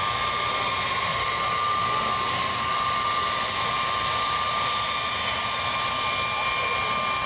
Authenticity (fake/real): real